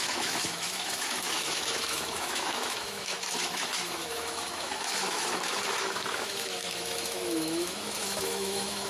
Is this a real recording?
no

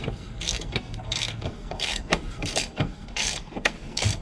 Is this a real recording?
no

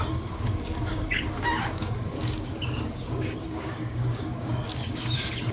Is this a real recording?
no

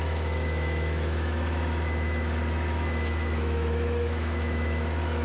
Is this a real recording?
no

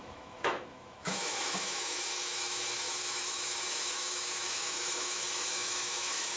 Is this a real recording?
no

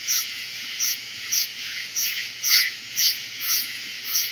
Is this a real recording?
no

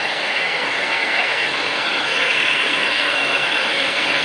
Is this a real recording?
no